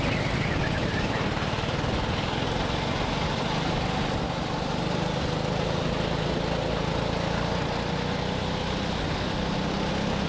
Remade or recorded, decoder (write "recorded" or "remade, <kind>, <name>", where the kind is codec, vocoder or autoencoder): recorded